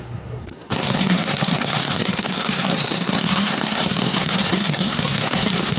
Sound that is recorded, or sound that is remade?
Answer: remade